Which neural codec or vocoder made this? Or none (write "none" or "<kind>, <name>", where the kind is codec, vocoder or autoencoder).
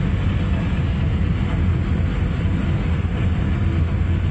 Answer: none